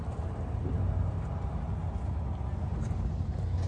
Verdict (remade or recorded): recorded